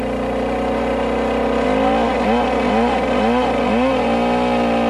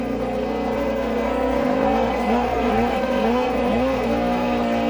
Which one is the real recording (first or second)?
first